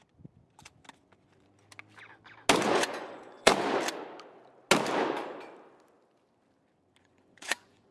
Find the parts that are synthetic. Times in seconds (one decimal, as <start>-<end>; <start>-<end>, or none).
2.7-3.5; 7.0-7.9